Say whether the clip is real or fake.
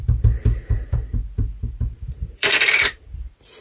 fake